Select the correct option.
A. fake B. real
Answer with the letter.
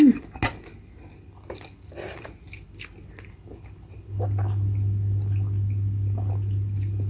B